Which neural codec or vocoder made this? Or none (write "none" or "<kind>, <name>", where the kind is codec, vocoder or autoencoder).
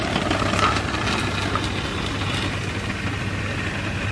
none